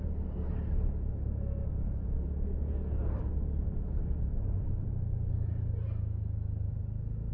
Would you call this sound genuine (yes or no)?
yes